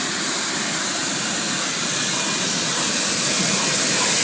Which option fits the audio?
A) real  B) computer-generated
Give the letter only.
A